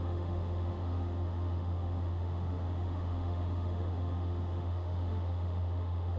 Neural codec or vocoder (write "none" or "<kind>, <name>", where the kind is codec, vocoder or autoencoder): autoencoder, DAC-VAE